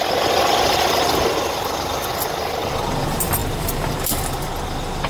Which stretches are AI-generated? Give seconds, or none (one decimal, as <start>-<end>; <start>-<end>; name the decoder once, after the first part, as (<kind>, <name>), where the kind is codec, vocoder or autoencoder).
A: 3.4-4.4 (vocoder, BigVGAN v2)